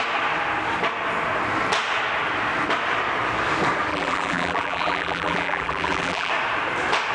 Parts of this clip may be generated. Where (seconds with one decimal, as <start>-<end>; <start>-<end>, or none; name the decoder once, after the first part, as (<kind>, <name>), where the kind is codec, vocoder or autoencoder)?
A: 3.9-6.3 (vocoder, BigVGAN v2)